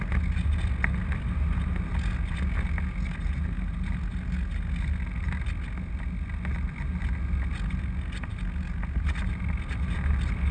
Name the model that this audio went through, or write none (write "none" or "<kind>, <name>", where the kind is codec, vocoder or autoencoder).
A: none